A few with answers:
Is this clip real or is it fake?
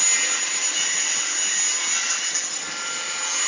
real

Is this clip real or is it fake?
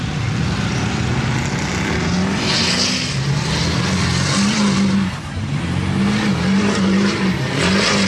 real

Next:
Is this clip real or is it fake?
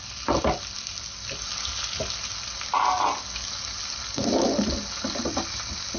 real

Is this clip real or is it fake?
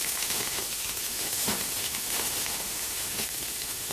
fake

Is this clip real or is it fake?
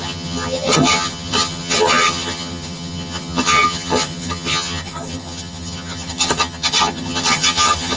fake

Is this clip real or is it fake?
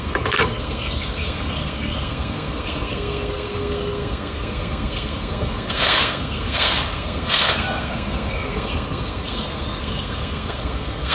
fake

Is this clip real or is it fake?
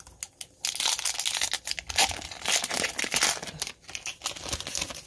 real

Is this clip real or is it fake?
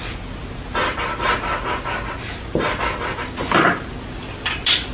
real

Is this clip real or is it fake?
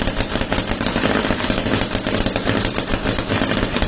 fake